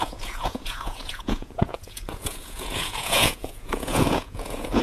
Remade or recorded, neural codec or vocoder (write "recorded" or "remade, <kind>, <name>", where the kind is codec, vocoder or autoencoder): remade, vocoder, Vocos